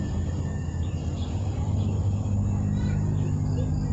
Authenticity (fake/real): real